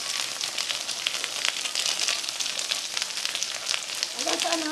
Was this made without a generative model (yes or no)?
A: yes